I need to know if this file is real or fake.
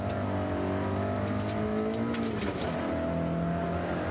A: real